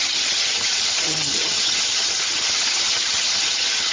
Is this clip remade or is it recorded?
remade